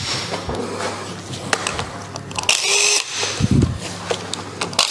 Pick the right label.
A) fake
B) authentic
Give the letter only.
B